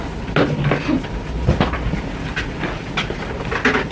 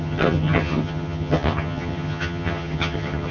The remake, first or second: second